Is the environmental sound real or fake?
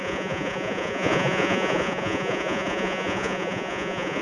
fake